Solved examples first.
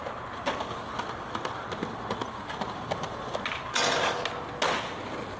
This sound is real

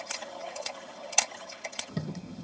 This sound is fake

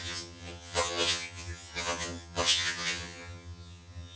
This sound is fake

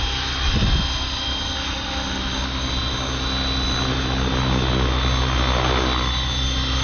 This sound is real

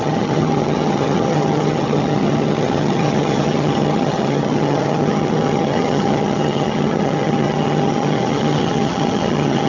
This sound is fake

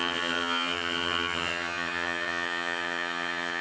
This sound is fake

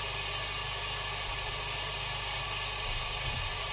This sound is real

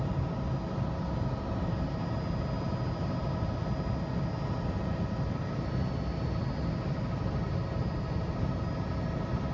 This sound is real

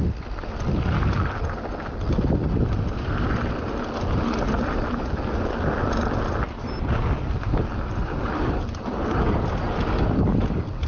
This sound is real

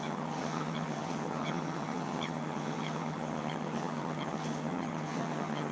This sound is fake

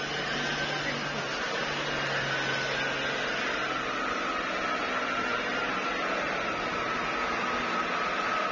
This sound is real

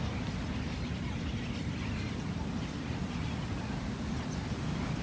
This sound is real